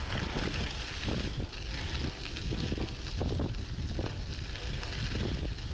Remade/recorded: recorded